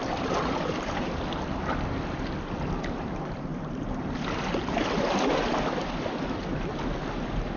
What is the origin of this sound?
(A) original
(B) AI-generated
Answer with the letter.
A